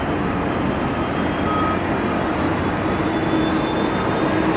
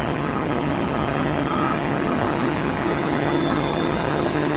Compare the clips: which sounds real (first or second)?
first